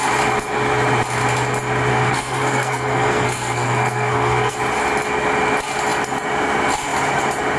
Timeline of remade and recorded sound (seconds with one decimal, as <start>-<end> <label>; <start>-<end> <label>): 0.0-1.9 recorded; 1.9-4.6 remade; 4.6-7.6 recorded